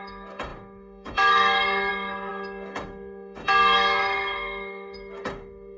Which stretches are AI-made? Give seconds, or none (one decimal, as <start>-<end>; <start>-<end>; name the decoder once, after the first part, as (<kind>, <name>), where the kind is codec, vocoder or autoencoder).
0.0-5.8 (codec, DAC)